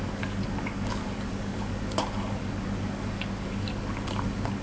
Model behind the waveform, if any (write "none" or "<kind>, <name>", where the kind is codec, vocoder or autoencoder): codec, DAC